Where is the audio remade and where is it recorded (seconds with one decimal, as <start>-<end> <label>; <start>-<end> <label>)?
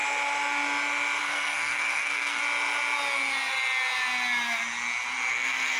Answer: 0.0-1.2 recorded; 1.2-2.4 remade; 2.4-5.3 recorded; 5.3-5.8 remade